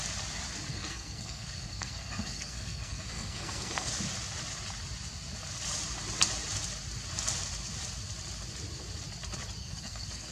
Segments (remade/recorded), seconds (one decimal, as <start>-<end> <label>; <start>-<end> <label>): 0.0-0.7 recorded; 0.7-3.9 remade; 3.9-9.6 recorded; 9.6-10.3 remade